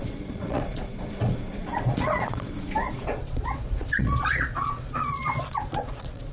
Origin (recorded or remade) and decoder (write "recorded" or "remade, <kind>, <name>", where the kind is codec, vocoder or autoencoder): remade, vocoder, Vocos